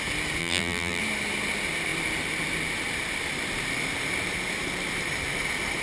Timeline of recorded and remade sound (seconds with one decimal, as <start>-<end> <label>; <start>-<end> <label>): 0.0-0.4 recorded; 0.4-1.0 remade; 1.0-5.8 recorded